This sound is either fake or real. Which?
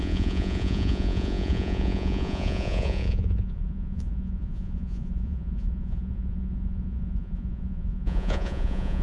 fake